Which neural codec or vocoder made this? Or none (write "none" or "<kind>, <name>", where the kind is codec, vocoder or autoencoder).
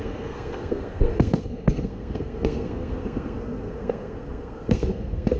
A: codec, SNAC